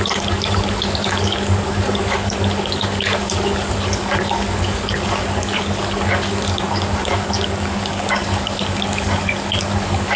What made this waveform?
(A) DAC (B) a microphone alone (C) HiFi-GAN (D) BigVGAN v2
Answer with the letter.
A